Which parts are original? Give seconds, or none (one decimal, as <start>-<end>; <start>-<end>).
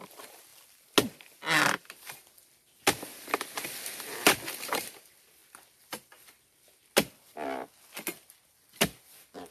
0.5-3.0; 5.4-9.5